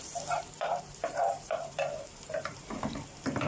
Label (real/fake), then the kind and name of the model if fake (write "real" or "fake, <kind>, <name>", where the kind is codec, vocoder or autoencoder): fake, vocoder, BigVGAN v2